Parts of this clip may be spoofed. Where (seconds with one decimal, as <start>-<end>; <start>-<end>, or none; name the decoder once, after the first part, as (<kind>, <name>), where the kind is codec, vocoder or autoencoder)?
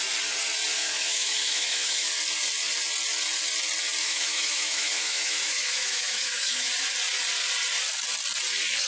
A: 0.7-2.1 (autoencoder, DAC-VAE); 4.0-6.7